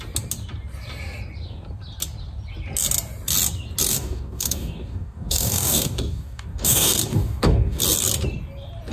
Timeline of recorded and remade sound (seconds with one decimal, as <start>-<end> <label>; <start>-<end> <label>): 0.0-3.9 recorded; 3.9-7.8 remade; 7.8-8.9 recorded